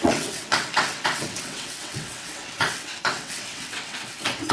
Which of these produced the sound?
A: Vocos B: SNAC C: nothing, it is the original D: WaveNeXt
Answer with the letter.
D